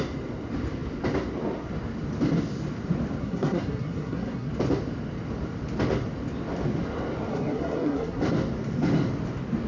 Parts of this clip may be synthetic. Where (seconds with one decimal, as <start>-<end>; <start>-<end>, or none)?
3.2-4.5; 7.3-8.2